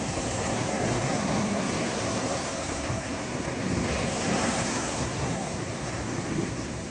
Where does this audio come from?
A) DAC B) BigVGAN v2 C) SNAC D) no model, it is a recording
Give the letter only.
C